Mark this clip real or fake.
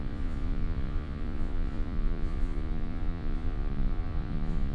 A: fake